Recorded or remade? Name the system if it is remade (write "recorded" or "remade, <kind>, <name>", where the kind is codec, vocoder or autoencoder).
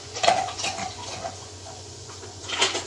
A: remade, vocoder, Vocos